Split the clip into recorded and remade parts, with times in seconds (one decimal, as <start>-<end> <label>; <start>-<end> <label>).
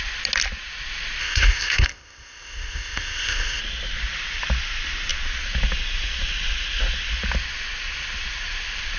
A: 0.0-1.2 recorded; 1.2-3.6 remade; 3.6-9.0 recorded